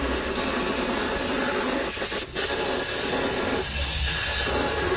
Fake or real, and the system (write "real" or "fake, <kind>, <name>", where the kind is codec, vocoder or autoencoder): real